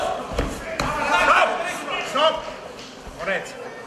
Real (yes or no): yes